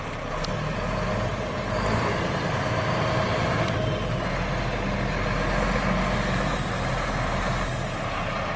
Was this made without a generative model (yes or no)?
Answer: yes